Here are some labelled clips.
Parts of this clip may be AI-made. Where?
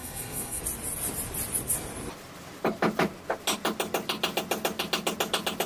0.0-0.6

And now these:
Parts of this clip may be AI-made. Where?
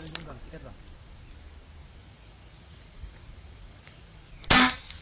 2.0-4.3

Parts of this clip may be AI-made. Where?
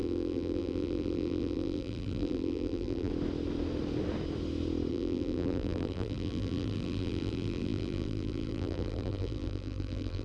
0.0-3.1; 4.9-10.2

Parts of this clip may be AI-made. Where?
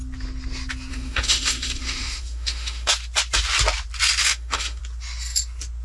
0.9-2.9; 4.2-4.8